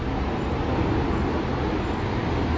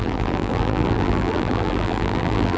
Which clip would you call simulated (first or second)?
second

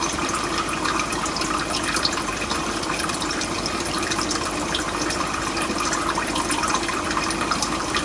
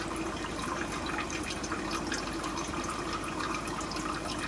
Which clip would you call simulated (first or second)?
first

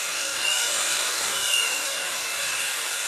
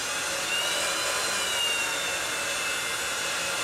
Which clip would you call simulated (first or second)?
first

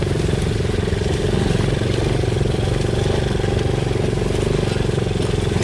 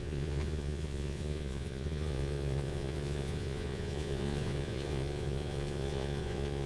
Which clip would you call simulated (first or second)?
second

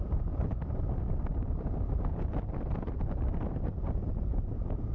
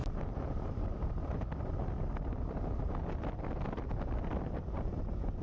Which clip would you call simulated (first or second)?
first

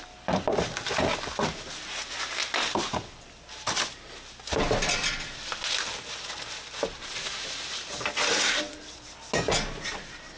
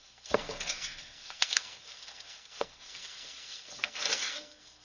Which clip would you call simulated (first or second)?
second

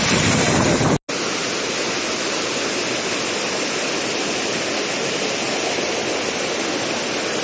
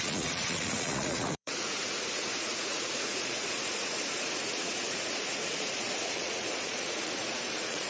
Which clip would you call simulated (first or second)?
second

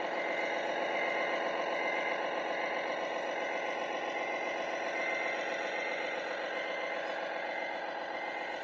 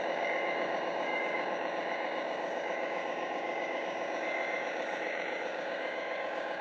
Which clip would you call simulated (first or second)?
second